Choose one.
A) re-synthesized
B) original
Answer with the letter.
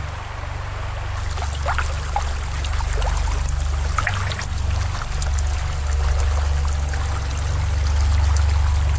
B